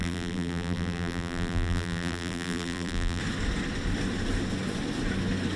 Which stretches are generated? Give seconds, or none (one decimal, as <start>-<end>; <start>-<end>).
0.0-3.2